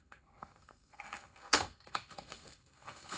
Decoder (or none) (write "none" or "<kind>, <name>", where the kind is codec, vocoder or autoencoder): codec, SNAC